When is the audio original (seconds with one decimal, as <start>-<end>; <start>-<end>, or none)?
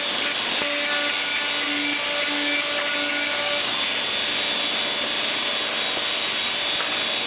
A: 0.0-3.1; 3.7-7.3